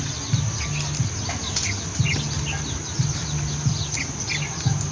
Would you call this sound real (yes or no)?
yes